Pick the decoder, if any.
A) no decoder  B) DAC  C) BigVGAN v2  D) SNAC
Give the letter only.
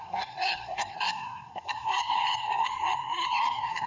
D